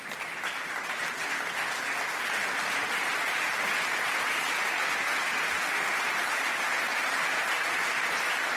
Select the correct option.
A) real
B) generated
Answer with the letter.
A